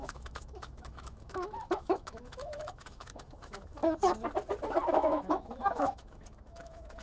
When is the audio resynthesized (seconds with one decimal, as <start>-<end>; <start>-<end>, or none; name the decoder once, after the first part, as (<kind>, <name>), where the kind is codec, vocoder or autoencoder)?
0.0-3.8 (autoencoder, DAC-VAE); 4.9-7.0